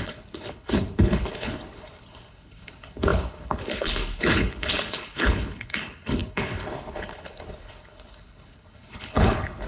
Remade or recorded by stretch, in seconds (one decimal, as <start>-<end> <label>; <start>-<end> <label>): 0.0-9.7 remade